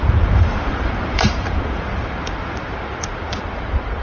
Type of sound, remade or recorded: remade